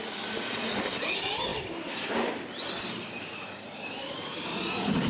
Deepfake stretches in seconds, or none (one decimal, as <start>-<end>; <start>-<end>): 4.0-4.6